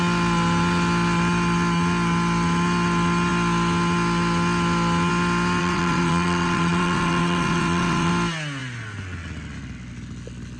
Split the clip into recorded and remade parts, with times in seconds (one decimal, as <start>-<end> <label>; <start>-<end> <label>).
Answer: 0.0-5.6 recorded; 5.6-8.1 remade; 8.1-10.6 recorded